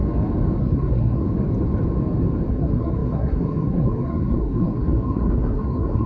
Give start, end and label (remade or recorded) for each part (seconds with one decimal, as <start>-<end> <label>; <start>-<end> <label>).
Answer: 0.0-0.6 recorded; 0.6-1.2 remade; 1.2-2.5 recorded; 2.5-6.1 remade